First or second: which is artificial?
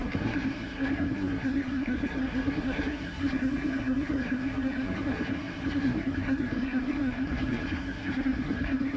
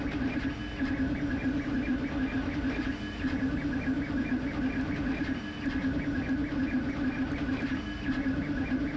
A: first